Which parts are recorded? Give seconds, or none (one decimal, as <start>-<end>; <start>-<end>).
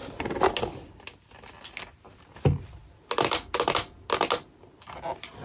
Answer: 0.0-5.4